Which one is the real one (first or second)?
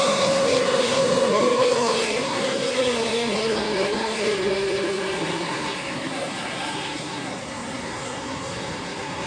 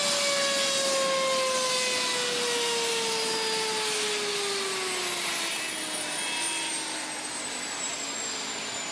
second